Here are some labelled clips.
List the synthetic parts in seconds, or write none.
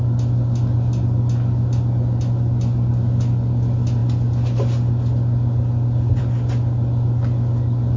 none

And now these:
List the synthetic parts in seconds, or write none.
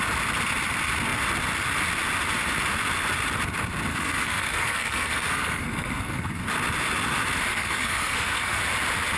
3.9-6.4 (codec, SNAC); 7.5-8.6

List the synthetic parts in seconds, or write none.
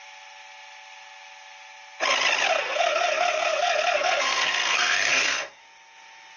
2.5-5.6 (codec, SNAC)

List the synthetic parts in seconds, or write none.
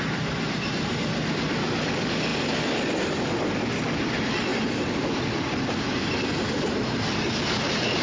none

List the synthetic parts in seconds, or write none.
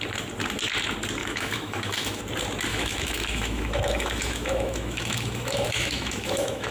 1.2-2.2 (autoencoder, DAC-VAE); 2.7-6.7